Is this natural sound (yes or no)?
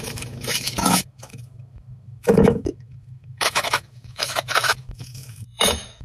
no